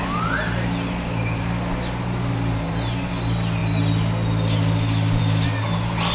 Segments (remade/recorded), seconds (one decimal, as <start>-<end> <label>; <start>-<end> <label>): 0.0-6.1 recorded